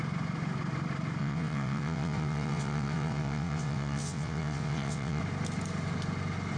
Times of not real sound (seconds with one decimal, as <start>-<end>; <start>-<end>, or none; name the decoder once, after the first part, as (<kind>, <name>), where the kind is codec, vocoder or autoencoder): 1.2-5.2 (vocoder, WaveNeXt)